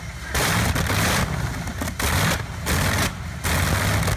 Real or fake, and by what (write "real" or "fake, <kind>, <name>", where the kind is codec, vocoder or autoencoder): real